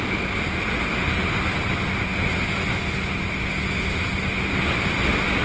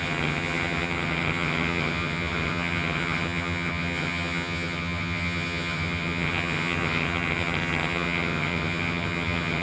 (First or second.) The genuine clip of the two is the first